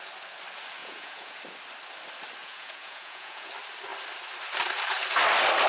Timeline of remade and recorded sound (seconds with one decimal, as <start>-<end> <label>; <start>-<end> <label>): 0.0-0.8 recorded; 0.8-1.4 remade; 1.4-2.4 recorded; 2.4-3.5 remade; 3.5-5.7 recorded